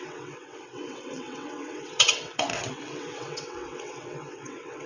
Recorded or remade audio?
remade